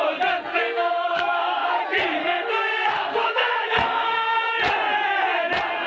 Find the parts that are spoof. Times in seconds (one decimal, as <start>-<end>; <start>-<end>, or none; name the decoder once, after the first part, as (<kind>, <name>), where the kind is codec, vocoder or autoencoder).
0.5-1.8 (codec, SNAC); 2.2-4.5